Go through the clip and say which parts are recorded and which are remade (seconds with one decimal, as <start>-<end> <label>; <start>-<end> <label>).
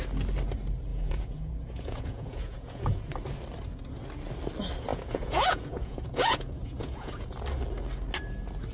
0.0-0.9 recorded; 0.9-2.8 remade; 2.8-4.9 recorded; 4.9-7.4 remade; 7.4-8.7 recorded